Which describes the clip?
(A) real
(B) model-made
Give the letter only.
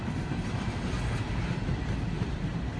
A